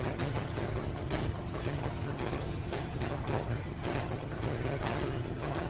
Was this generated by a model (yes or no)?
yes